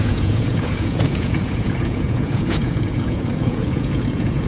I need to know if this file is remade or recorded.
remade